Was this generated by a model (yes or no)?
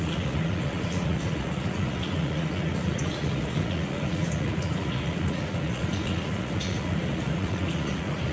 yes